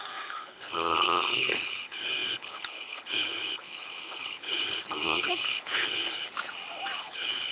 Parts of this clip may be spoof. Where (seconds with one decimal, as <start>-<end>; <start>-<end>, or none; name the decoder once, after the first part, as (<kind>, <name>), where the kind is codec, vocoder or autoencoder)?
0.0-6.3 (codec, HILCodec); 7.0-7.5